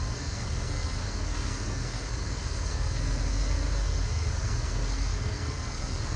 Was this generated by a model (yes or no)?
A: yes